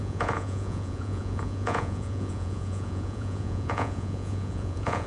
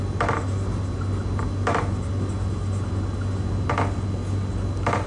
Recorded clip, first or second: second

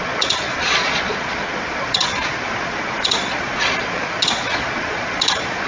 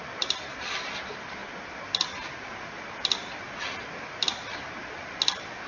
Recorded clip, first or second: second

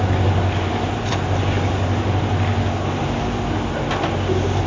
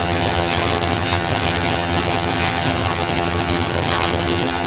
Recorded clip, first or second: first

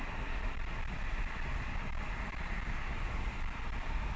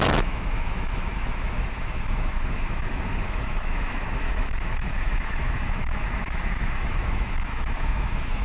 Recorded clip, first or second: first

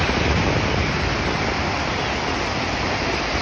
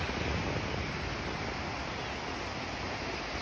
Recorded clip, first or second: second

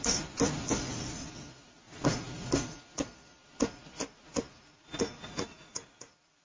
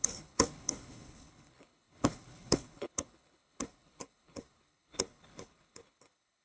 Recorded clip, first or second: first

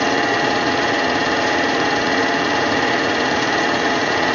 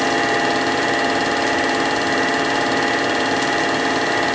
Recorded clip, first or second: second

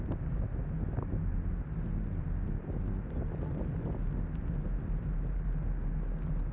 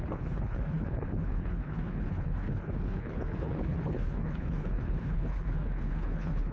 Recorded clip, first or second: first